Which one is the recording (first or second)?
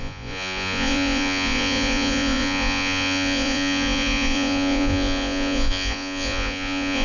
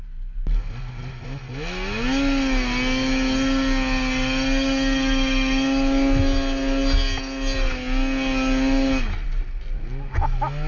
second